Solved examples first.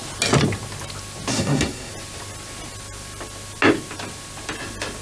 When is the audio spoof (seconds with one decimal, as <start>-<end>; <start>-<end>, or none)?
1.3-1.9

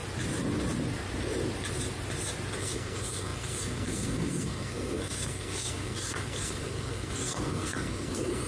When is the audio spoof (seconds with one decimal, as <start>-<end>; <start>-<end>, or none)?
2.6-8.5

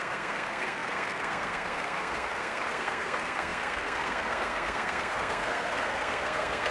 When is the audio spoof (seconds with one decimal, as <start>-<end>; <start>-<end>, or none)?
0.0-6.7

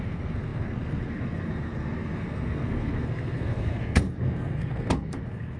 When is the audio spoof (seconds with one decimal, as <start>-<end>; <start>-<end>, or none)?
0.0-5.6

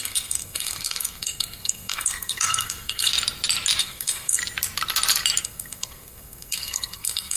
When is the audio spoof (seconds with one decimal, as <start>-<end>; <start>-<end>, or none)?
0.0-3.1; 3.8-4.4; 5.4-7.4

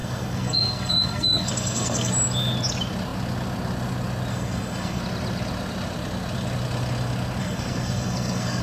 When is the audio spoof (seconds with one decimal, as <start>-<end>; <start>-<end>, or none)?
0.0-2.1; 4.3-5.0; 7.4-8.6